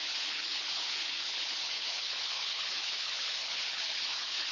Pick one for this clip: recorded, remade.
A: remade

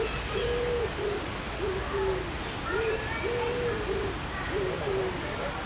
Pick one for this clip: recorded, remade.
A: recorded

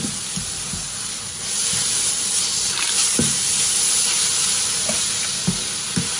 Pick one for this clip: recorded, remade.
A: recorded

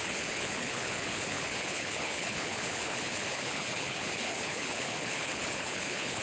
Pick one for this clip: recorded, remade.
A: remade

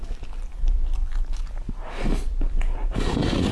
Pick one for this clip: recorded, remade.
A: recorded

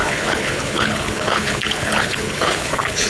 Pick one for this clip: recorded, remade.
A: remade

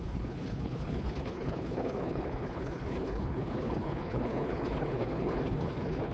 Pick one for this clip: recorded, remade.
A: remade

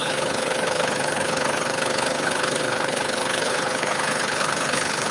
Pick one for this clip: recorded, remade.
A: remade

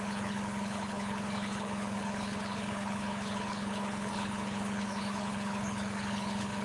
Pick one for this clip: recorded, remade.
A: remade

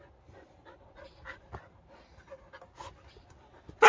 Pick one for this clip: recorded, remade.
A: recorded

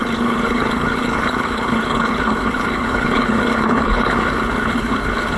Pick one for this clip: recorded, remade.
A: remade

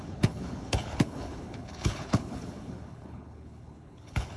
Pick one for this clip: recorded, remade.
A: remade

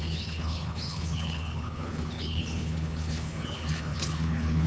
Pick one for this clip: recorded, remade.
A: remade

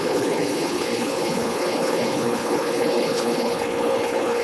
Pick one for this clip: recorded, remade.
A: remade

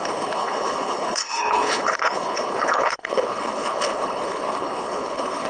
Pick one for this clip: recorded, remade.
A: remade